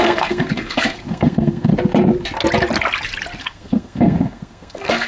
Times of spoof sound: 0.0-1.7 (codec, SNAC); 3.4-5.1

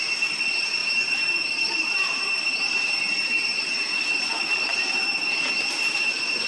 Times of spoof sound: 0.8-3.9 (vocoder, BigVGAN v2); 4.7-6.5

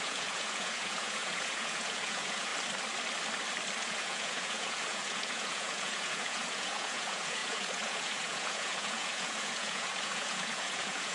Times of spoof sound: 0.0-2.5 (vocoder, Vocos); 3.8-11.1

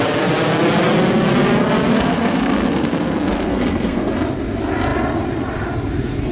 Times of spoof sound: 1.9-4.1 (codec, SNAC)

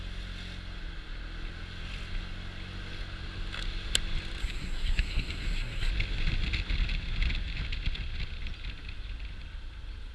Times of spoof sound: 4.4-5.9 (codec, SNAC)